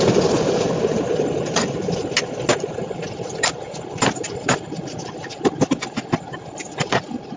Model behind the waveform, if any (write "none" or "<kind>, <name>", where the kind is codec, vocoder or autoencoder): none